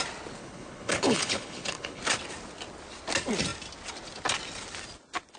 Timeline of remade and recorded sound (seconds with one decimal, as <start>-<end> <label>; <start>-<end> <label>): 0.0-0.4 recorded; 0.4-2.0 remade; 2.0-5.4 recorded